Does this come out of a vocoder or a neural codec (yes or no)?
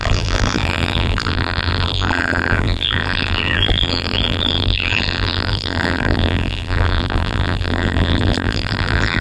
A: yes